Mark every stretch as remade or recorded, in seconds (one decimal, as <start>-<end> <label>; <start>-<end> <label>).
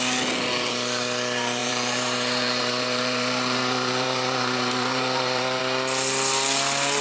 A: 0.0-1.6 recorded; 1.6-5.6 remade; 5.6-7.0 recorded